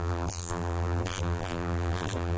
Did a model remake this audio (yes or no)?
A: yes